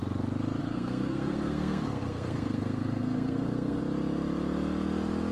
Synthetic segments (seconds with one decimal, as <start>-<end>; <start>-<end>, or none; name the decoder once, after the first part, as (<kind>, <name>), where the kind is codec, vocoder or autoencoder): 0.6-3.8 (codec, SNAC)